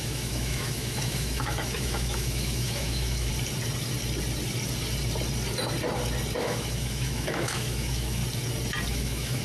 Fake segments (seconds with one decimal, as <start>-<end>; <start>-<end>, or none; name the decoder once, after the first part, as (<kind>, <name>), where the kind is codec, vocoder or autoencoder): 0.0-3.3 (autoencoder, DAC-VAE); 6.4-8.2; 8.9-9.4